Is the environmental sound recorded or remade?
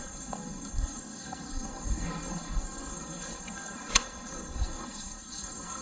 remade